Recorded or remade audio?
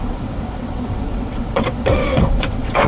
remade